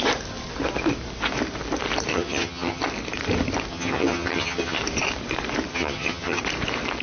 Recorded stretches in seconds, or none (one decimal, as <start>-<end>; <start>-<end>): 0.0-2.1; 2.8-3.7; 4.8-5.7; 6.4-7.0